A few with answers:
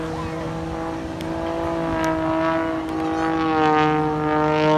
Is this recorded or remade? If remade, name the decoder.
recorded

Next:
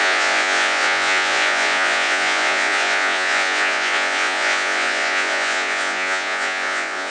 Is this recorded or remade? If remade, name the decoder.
remade, vocoder, Vocos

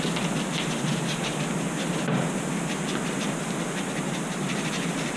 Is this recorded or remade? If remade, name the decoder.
recorded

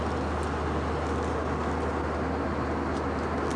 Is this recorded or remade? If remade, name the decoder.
recorded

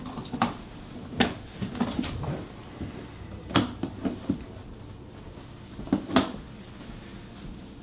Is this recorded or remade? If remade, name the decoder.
recorded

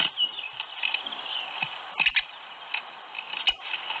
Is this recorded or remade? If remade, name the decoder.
recorded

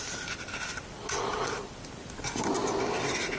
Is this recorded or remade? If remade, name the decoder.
recorded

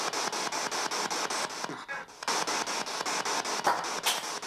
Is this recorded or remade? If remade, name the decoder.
recorded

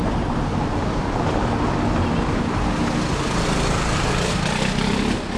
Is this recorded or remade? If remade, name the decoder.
recorded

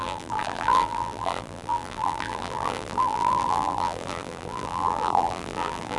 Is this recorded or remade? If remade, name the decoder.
remade, vocoder, BigVGAN v2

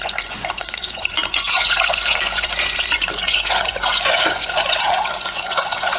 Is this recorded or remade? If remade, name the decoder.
remade, vocoder, Vocos